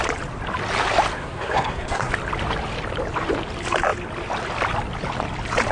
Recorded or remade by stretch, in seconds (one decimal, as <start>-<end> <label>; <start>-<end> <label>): 0.0-1.1 recorded; 1.1-2.1 remade; 2.1-5.7 recorded